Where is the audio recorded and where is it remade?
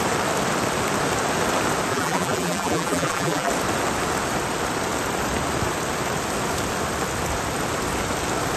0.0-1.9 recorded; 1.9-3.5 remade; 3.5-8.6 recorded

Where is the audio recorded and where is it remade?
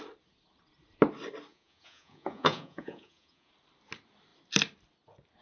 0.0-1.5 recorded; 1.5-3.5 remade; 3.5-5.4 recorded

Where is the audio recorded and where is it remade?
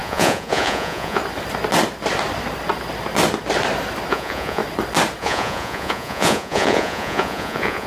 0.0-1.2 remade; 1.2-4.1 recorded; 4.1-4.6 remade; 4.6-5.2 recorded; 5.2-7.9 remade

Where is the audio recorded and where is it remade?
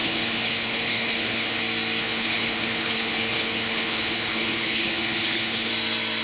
0.0-1.6 remade; 1.6-2.0 recorded; 2.0-5.7 remade; 5.7-6.2 recorded